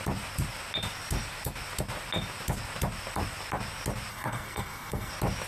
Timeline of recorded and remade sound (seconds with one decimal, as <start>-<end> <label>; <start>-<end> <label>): 0.0-4.1 recorded; 4.1-5.1 remade; 5.1-5.5 recorded